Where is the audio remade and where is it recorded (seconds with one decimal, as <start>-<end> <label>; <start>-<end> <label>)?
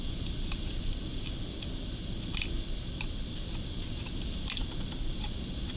0.0-5.8 recorded